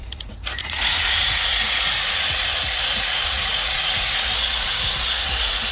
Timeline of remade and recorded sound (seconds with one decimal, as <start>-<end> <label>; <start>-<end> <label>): 0.0-5.7 remade